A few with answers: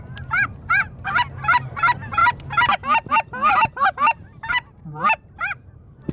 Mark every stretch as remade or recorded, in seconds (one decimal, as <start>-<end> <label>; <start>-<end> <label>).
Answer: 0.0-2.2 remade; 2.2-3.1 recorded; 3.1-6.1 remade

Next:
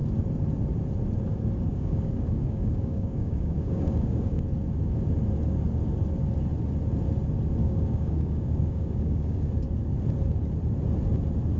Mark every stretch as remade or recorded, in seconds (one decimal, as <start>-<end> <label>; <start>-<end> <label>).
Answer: 0.0-1.7 recorded; 1.7-4.4 remade; 4.4-7.6 recorded; 7.6-9.5 remade; 9.5-11.6 recorded

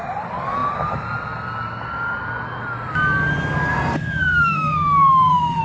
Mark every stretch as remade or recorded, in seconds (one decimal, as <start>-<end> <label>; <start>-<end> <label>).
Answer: 0.0-3.7 recorded; 3.7-5.6 remade